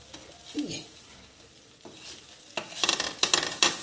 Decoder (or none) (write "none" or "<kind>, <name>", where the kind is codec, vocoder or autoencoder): none